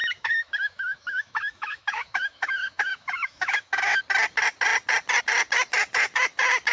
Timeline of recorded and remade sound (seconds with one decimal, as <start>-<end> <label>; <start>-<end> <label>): 0.0-4.0 remade; 4.0-6.7 recorded

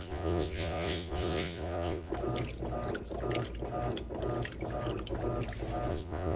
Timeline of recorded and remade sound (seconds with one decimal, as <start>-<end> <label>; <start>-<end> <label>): 0.0-2.1 remade; 2.1-5.9 recorded; 5.9-6.4 remade

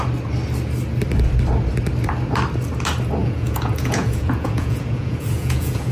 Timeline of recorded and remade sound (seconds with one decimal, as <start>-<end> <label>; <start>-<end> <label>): 0.0-3.2 recorded; 3.2-5.9 remade

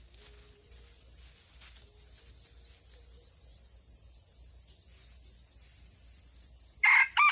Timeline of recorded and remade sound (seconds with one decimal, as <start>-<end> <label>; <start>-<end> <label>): 0.0-7.3 recorded

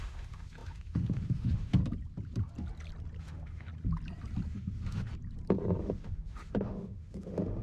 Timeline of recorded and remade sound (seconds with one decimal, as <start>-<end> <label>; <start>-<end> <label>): 0.0-1.8 remade; 1.8-3.2 recorded; 3.2-3.7 remade; 3.7-4.5 recorded; 4.5-5.1 remade; 5.1-5.8 recorded; 5.8-7.6 remade

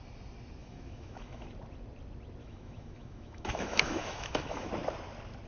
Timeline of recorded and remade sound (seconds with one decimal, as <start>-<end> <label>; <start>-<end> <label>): 0.0-0.6 recorded; 0.6-1.5 remade; 1.5-2.4 recorded; 2.4-4.7 remade; 4.7-5.5 recorded